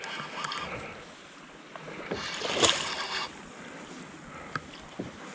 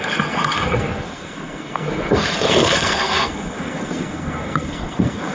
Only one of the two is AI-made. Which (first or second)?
second